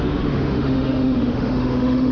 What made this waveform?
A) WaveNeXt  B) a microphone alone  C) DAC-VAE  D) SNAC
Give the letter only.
C